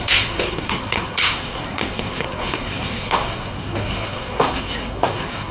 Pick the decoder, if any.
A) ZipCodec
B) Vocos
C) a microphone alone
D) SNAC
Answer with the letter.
D